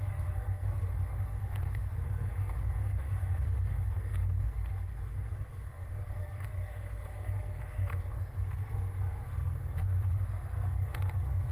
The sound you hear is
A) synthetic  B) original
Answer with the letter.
A